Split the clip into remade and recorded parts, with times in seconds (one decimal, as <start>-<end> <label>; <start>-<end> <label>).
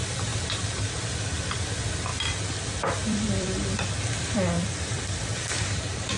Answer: 0.0-6.2 remade